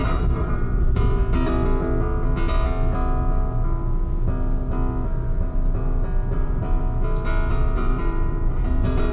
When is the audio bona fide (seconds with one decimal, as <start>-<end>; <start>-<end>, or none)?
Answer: 1.2-6.3; 6.8-7.5